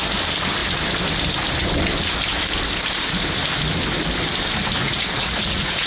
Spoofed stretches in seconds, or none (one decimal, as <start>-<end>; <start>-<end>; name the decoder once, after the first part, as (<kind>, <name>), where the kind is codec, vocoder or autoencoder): 4.8-5.9 (vocoder, Vocos)